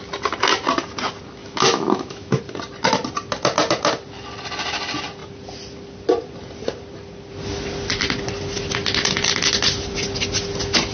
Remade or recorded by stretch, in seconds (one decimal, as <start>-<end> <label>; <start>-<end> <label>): 0.0-1.4 recorded; 1.4-2.4 remade; 2.4-10.9 recorded